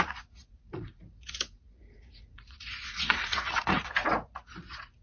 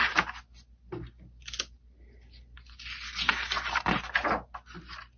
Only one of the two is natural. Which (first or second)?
second